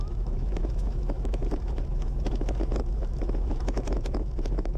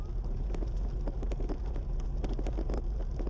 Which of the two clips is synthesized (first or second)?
first